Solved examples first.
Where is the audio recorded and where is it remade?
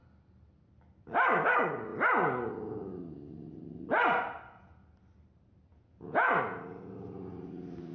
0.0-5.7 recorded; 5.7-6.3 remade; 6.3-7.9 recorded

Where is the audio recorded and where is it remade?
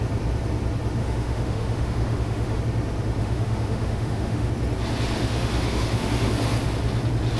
0.0-1.0 recorded; 1.0-2.6 remade; 2.6-3.2 recorded; 3.2-4.5 remade; 4.5-5.2 recorded; 5.2-6.3 remade; 6.3-7.4 recorded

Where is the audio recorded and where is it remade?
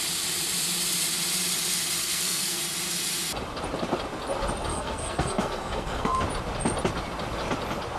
0.0-2.0 recorded; 2.0-2.6 remade; 2.6-4.7 recorded; 4.7-6.2 remade; 6.2-8.0 recorded